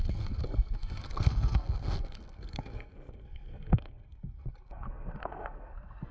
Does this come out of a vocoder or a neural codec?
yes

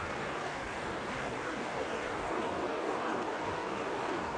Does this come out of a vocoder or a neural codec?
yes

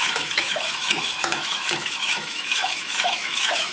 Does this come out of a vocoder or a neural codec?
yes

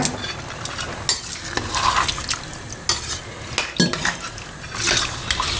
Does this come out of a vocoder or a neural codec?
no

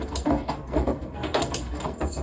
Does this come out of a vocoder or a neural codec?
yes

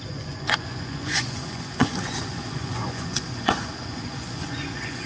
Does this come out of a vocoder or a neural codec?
yes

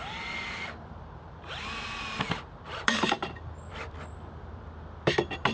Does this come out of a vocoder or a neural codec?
yes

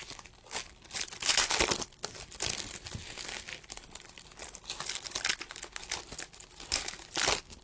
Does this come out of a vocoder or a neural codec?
no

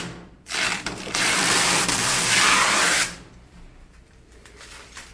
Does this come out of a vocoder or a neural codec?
yes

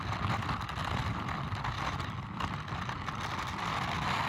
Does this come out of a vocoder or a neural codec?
no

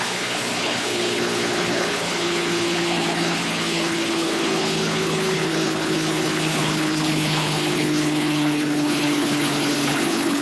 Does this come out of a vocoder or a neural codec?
yes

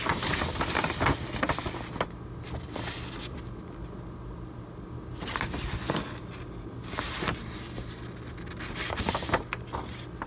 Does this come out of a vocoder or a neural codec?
no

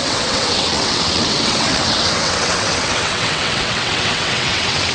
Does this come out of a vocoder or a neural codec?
yes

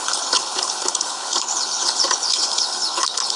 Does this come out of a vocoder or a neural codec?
yes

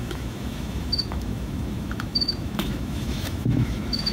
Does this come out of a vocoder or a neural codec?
yes